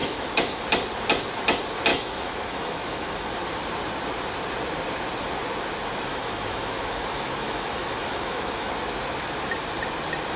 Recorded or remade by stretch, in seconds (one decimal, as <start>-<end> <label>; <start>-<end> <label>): 0.0-0.6 remade; 0.6-1.9 recorded; 1.9-3.3 remade; 3.3-6.1 recorded; 6.1-8.7 remade; 8.7-10.4 recorded